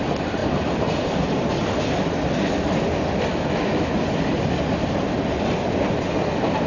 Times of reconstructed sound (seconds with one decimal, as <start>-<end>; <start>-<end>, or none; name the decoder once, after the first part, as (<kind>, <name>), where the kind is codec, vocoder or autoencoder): 3.3-3.9 (autoencoder, DAC-VAE)